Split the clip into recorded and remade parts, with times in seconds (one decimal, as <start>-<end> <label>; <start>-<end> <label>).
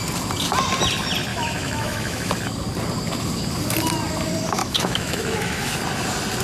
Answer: 0.0-1.3 recorded; 1.3-2.3 remade; 2.3-4.6 recorded; 4.6-5.7 remade; 5.7-6.4 recorded